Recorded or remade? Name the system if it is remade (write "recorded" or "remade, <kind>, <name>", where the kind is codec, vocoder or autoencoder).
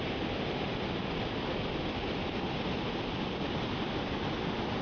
recorded